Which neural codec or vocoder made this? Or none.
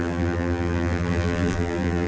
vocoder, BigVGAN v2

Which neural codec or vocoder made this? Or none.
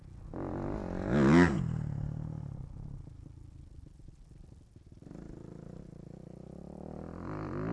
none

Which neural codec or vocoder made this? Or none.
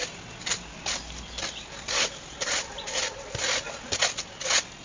none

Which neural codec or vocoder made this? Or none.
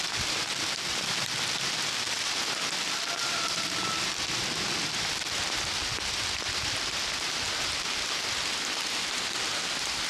none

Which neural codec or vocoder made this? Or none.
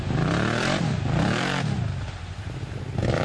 vocoder, BigVGAN v2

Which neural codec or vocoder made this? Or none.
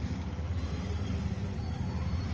none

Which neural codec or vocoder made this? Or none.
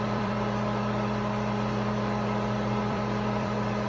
vocoder, BigVGAN v2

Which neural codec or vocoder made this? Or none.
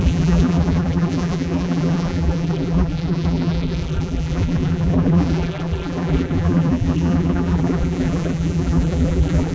vocoder, BigVGAN v2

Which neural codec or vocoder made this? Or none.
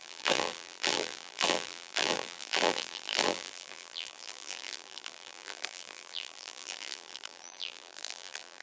vocoder, BigVGAN v2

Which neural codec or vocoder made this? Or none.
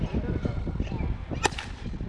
none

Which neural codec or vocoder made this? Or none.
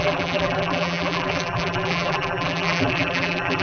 vocoder, BigVGAN v2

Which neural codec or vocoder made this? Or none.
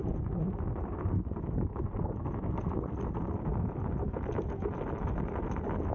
none